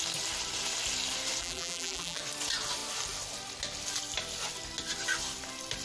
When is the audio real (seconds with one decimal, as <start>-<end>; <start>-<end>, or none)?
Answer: 0.0-1.4; 2.2-5.8